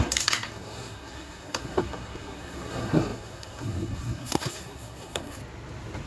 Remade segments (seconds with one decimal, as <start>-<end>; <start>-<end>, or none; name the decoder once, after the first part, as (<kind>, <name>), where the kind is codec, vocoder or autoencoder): 0.0-5.4 (codec, SNAC)